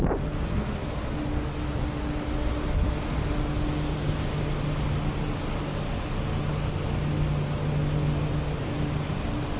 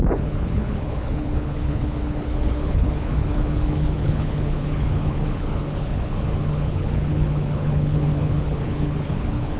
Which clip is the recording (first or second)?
first